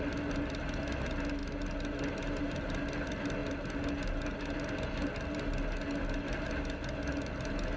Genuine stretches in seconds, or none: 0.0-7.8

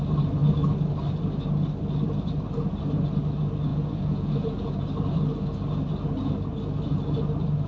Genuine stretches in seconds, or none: 0.0-3.7; 4.8-7.7

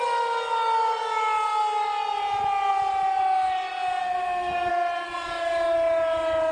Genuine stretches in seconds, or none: 0.0-4.0; 4.7-6.5

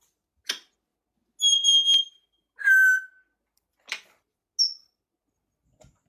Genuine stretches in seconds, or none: 0.0-6.1

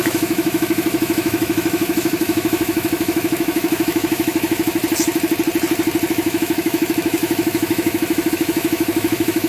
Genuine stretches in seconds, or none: 4.8-6.1

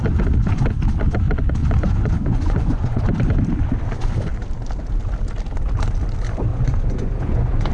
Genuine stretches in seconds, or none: 0.0-1.6; 3.0-6.5

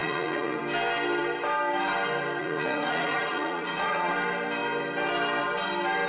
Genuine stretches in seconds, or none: 0.6-2.4; 4.1-6.1